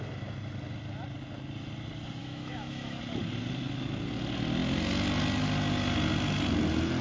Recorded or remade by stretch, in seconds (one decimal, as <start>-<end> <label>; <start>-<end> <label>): 0.0-2.2 recorded; 2.2-3.0 remade; 3.0-7.0 recorded